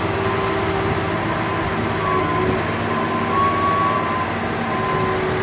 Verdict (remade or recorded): recorded